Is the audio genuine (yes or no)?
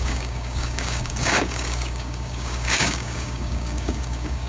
no